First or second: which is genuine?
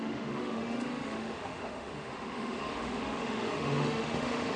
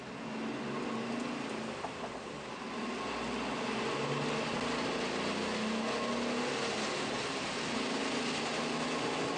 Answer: second